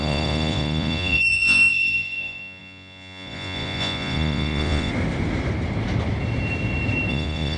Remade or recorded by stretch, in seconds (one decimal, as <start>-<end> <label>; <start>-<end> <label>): 0.0-4.9 remade; 4.9-7.1 recorded; 7.1-7.6 remade